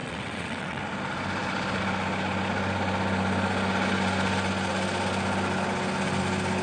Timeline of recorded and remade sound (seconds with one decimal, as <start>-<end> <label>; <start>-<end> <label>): 0.0-0.8 remade; 0.8-6.6 recorded